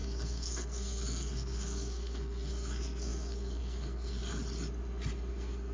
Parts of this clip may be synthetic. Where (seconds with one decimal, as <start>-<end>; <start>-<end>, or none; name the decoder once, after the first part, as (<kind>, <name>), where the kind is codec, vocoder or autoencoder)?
0.0-4.2 (codec, SNAC); 5.3-5.7